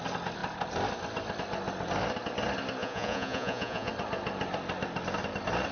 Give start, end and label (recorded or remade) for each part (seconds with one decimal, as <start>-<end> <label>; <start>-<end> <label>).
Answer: 0.0-2.8 recorded; 2.8-3.9 remade; 3.9-5.7 recorded

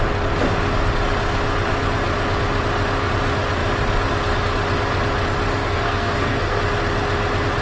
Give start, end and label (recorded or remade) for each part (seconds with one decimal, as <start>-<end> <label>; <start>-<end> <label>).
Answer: 0.0-5.6 recorded; 5.6-6.6 remade; 6.6-7.6 recorded

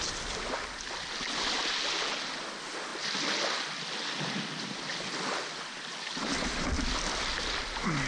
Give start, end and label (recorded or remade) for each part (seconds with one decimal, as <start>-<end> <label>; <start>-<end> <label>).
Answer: 0.0-8.1 recorded